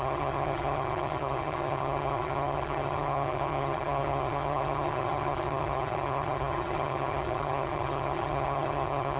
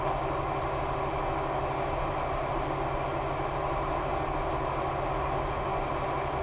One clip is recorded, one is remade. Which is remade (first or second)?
first